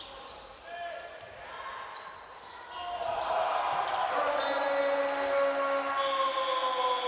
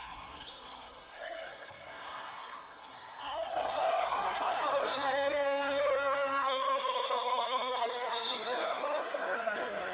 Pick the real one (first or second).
first